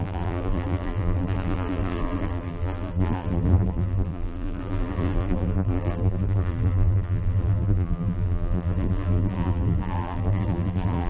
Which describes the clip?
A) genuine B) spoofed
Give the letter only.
B